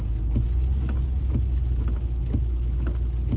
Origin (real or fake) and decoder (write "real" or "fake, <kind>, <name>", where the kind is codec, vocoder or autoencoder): real